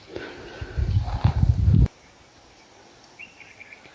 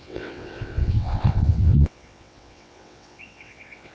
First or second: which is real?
first